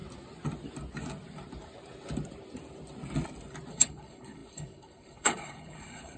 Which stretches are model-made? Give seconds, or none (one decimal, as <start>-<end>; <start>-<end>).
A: 3.7-6.2